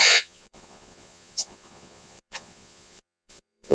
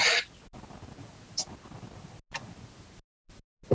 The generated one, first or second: first